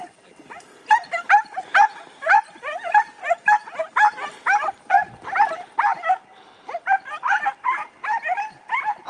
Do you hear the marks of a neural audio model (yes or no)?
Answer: no